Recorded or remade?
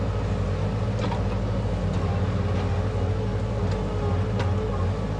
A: recorded